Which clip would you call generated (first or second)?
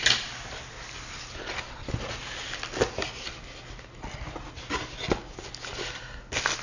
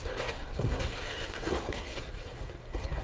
second